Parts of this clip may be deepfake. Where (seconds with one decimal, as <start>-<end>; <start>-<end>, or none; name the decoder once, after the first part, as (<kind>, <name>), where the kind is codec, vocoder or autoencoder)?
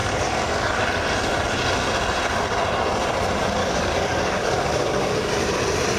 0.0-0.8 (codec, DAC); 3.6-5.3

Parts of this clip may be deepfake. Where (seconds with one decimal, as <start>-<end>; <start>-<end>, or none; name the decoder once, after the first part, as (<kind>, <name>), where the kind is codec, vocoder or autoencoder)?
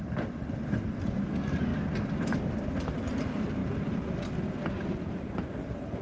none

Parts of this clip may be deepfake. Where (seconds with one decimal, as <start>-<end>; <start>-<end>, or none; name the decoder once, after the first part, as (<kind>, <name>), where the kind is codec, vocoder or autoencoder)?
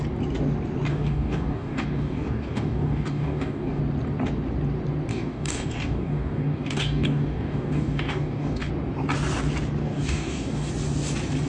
0.9-3.8 (codec, DAC); 5.1-8.7; 9.8-10.7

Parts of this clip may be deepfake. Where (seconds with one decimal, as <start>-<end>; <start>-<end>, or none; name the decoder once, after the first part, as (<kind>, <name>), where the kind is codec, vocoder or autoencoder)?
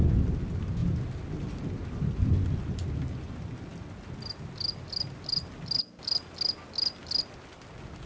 none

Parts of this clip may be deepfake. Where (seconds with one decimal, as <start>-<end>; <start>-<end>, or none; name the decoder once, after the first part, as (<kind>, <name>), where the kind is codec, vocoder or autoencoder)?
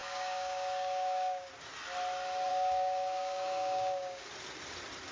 0.0-1.5 (codec, DAC); 2.5-4.2